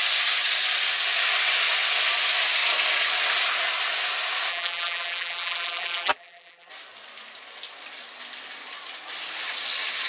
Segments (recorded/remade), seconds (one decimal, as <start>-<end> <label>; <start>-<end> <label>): 0.0-4.5 recorded; 4.5-6.7 remade; 6.7-10.1 recorded